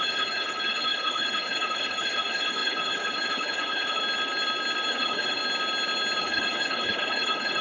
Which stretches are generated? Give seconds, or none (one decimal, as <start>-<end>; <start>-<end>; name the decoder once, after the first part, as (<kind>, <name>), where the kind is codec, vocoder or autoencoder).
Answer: 0.0-4.0 (codec, HILCodec); 4.9-5.4; 6.2-7.6